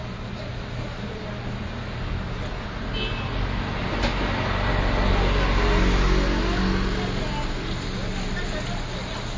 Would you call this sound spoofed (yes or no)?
no